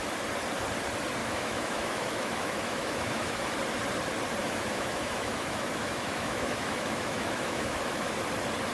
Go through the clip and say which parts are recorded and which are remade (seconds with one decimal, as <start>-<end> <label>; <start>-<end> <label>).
0.0-1.2 recorded; 1.2-3.5 remade; 3.5-4.4 recorded; 4.4-8.2 remade; 8.2-8.7 recorded

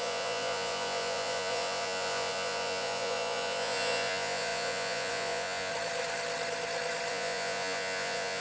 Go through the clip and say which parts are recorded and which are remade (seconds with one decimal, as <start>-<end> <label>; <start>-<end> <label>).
0.0-5.7 remade; 5.7-7.1 recorded; 7.1-8.4 remade